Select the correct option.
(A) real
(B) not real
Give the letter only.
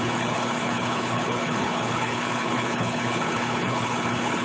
B